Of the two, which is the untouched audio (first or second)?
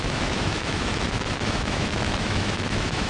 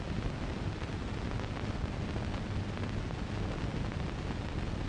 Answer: second